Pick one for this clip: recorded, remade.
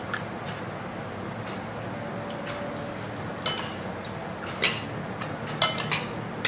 recorded